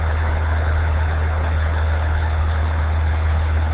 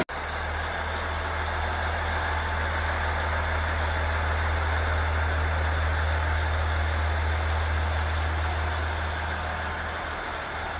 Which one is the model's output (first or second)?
first